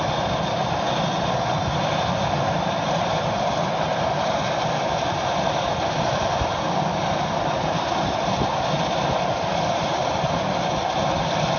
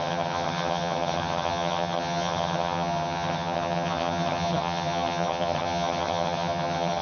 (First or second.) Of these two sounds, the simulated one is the second